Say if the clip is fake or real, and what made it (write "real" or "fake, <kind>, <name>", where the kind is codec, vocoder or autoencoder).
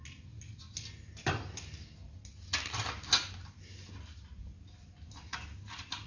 real